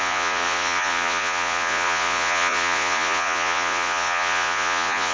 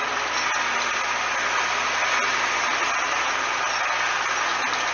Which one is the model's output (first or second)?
first